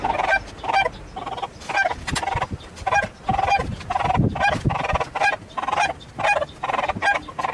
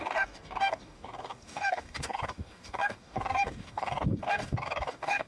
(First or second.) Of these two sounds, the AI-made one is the second